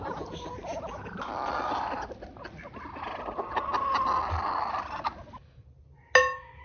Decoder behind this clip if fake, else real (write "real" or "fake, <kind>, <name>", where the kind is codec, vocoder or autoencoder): real